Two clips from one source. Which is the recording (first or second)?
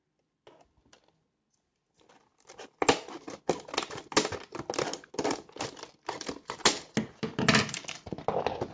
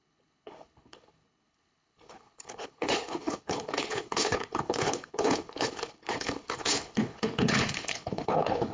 first